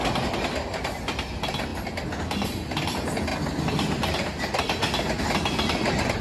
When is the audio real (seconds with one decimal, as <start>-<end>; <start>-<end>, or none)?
0.0-6.2

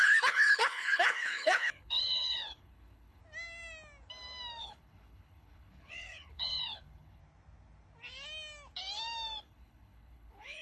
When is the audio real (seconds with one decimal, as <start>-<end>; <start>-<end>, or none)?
3.2-4.6; 7.2-9.4

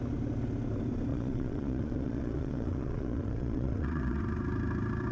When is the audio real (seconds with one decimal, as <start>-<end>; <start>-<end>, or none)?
0.0-1.1; 4.2-5.1

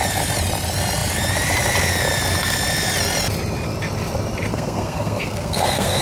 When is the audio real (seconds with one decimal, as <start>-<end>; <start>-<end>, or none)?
0.0-4.5

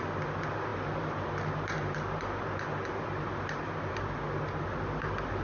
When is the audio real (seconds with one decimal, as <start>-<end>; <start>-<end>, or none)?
0.0-5.4

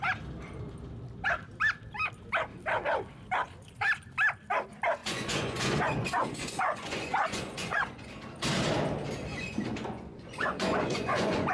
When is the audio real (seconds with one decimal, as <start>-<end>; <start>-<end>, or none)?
0.0-5.0; 8.1-9.3

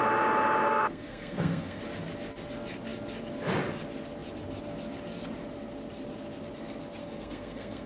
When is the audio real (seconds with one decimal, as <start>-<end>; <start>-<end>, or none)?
0.0-0.7; 1.8-7.0